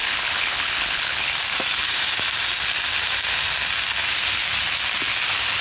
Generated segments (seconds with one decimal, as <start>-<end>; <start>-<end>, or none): 0.0-1.3